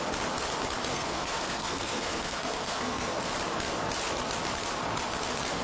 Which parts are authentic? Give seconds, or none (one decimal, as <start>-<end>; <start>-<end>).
0.0-0.9; 3.3-5.6